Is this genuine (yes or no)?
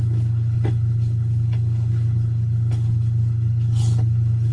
no